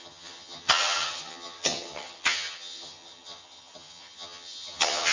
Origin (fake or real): fake